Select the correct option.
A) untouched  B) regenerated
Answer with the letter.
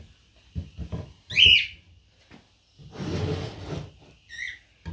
A